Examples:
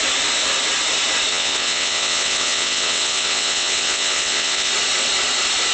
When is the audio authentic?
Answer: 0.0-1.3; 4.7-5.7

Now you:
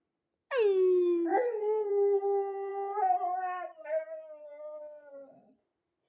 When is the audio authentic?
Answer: 0.0-1.3; 1.9-6.1

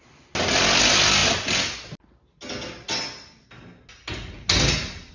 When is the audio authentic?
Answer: 0.0-5.1

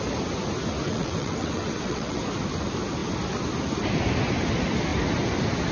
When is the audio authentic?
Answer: 0.0-0.9; 2.2-5.7

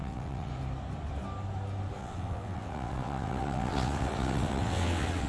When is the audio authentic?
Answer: 0.5-2.0

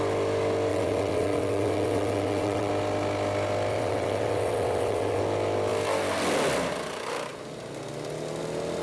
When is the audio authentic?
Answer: 0.0-0.7; 2.7-3.7; 5.2-8.8

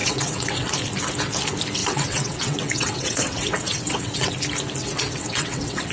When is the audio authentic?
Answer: 0.7-1.8; 4.3-4.8